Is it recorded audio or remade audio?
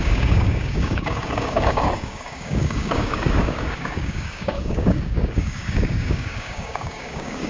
remade